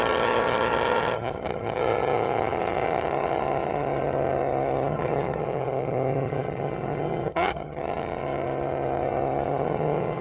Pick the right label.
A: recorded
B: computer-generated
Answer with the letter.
B